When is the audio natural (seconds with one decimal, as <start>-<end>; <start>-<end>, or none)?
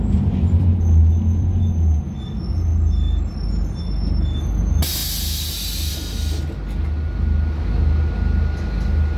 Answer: 0.0-9.2